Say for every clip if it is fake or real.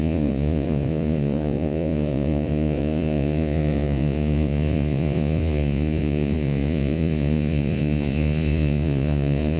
fake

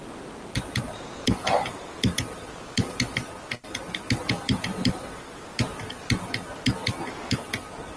real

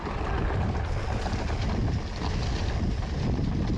real